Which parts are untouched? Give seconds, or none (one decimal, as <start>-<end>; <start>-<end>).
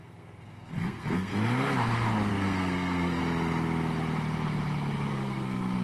1.3-2.3; 3.2-5.1